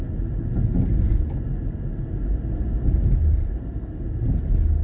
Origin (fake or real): real